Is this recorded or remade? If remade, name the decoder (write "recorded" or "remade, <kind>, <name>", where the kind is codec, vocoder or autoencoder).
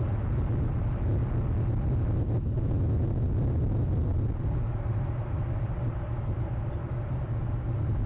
recorded